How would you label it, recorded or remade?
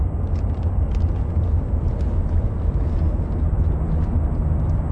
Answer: recorded